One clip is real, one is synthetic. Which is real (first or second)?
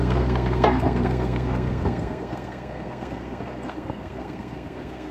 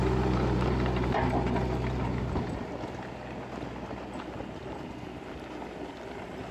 second